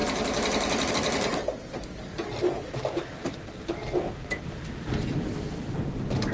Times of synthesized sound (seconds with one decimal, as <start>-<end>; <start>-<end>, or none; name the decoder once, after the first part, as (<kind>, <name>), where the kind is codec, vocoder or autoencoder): none